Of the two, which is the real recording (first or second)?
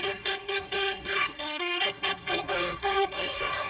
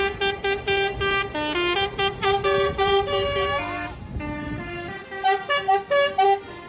second